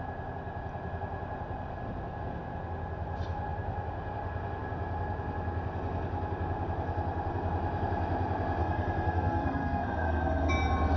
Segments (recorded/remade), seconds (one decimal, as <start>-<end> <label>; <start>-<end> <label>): 0.0-8.6 recorded; 8.6-10.5 remade; 10.5-11.0 recorded